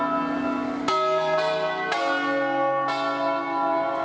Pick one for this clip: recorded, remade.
recorded